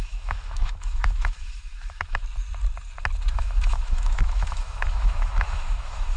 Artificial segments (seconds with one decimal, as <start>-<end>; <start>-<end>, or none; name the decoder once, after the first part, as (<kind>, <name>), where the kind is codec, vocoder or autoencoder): 0.0-2.2 (autoencoder, DAC-VAE); 3.3-6.2